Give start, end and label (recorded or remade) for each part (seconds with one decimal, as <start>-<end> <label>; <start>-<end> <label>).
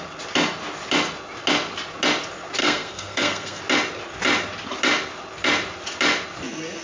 0.0-2.6 recorded; 2.6-3.6 remade; 3.6-6.8 recorded